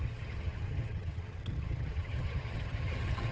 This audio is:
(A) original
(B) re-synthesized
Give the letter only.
B